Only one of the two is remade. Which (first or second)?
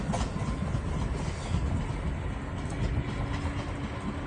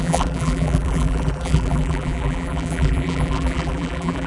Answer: second